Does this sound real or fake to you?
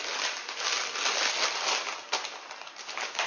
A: real